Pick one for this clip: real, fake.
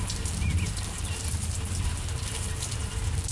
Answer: fake